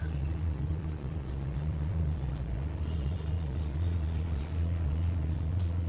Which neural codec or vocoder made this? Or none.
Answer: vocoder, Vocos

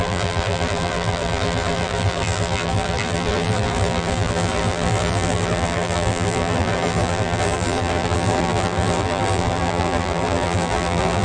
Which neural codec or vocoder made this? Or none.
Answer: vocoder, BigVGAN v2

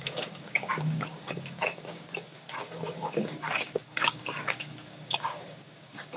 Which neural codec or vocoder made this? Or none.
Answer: codec, DAC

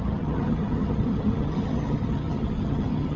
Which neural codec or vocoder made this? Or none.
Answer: vocoder, HiFi-GAN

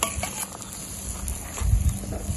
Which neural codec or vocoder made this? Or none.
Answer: none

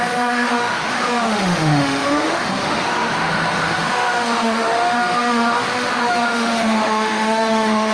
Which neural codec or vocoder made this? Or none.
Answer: autoencoder, DAC-VAE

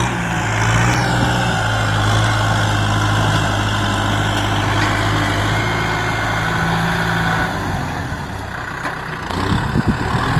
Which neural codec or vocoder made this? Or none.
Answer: none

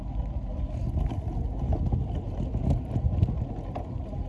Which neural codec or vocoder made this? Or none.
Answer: none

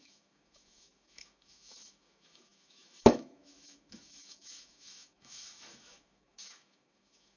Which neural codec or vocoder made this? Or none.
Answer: autoencoder, DAC-VAE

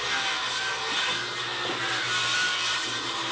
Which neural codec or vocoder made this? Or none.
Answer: vocoder, BigVGAN v2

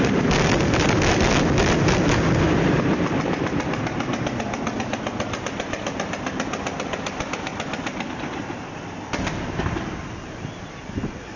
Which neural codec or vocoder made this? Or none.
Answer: none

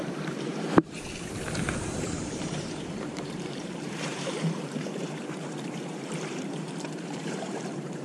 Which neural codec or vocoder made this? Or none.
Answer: vocoder, BigVGAN v2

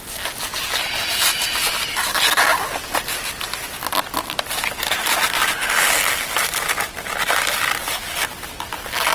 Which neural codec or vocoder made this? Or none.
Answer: none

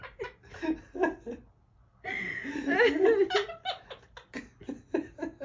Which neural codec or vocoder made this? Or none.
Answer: none